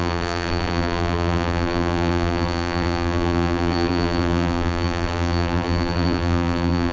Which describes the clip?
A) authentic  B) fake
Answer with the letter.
B